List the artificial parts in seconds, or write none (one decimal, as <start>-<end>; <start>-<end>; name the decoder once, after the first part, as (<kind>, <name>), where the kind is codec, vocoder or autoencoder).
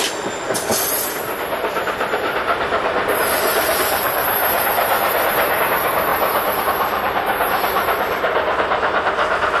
0.0-0.7 (vocoder, BigVGAN v2); 3.2-9.6